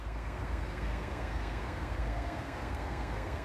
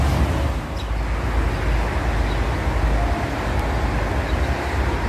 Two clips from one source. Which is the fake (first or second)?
first